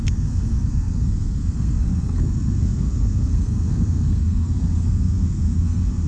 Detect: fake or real fake